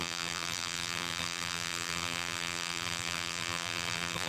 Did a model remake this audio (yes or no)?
yes